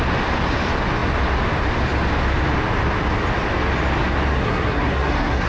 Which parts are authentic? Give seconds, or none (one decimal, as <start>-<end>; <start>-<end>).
0.0-4.3